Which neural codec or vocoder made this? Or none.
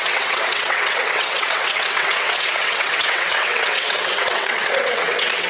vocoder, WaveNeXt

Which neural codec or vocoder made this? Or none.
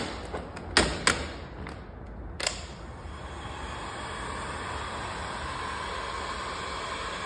none